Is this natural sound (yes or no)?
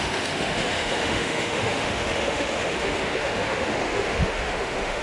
no